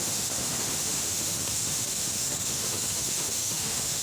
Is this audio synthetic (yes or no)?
yes